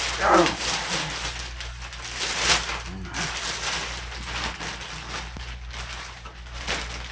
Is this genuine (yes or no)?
yes